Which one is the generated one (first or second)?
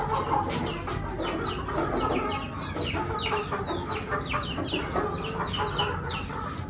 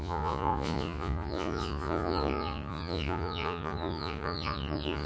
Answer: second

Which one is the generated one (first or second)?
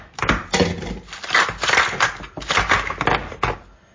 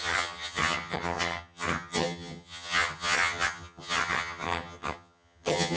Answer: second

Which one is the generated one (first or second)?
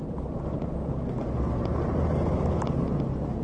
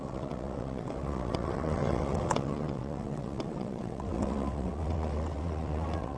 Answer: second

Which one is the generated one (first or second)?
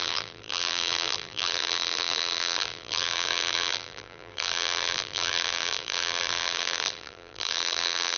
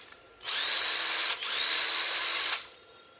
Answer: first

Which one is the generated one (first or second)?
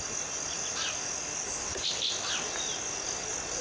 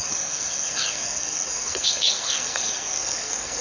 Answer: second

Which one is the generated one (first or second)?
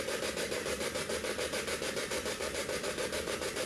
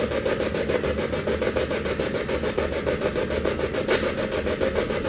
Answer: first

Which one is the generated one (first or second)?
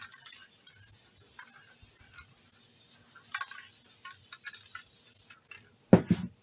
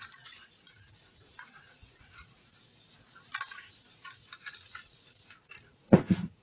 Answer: second